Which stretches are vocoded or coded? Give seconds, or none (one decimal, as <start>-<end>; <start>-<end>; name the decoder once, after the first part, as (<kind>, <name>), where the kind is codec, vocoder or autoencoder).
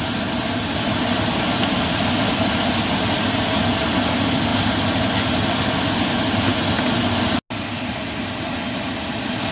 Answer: none